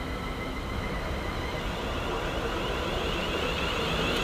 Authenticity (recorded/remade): recorded